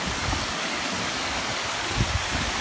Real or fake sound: fake